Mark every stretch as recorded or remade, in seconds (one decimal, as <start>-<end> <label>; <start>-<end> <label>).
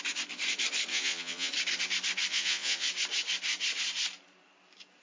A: 0.0-0.9 recorded; 0.9-1.5 remade; 1.5-2.3 recorded; 2.3-2.9 remade; 2.9-5.0 recorded